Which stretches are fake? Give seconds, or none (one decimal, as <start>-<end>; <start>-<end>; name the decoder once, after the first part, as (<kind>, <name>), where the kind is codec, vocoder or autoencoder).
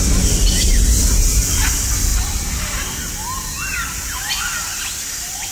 none